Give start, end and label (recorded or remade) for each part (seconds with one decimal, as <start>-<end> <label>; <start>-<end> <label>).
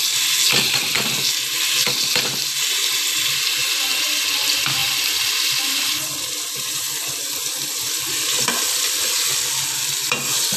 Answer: 0.0-10.6 recorded